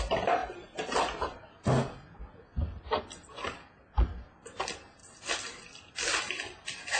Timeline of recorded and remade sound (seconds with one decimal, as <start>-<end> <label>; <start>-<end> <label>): 0.0-7.0 recorded